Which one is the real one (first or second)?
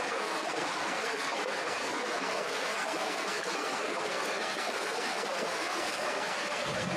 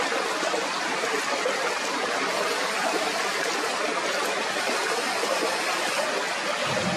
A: second